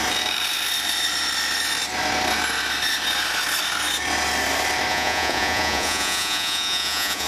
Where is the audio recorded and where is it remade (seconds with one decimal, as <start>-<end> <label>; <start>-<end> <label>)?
0.0-4.9 recorded; 4.9-7.3 remade